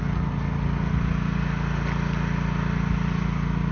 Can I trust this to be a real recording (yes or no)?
yes